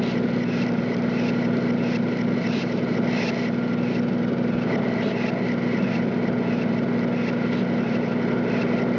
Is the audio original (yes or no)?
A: yes